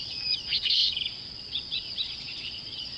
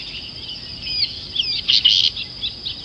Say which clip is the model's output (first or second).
first